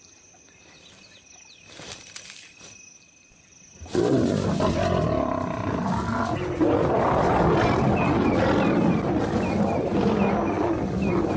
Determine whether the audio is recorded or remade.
recorded